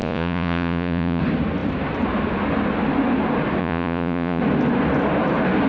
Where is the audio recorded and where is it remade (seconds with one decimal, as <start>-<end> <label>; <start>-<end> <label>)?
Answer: 0.0-1.2 remade; 1.2-3.6 recorded; 3.6-4.4 remade; 4.4-5.7 recorded